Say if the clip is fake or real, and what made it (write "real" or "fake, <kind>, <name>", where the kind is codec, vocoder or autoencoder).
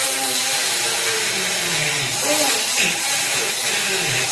real